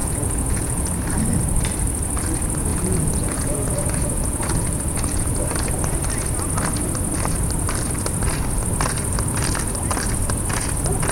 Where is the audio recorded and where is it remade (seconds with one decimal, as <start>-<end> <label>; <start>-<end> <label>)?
0.0-0.9 remade; 0.9-2.7 recorded; 2.7-5.4 remade; 5.4-11.1 recorded